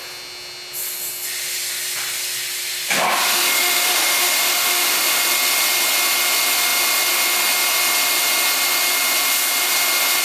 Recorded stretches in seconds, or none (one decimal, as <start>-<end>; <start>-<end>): 0.0-3.3; 5.2-10.2